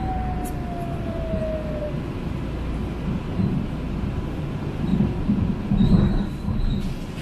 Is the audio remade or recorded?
recorded